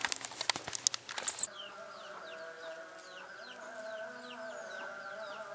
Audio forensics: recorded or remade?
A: recorded